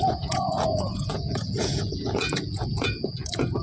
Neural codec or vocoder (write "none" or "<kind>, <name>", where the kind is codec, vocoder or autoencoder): vocoder, Vocos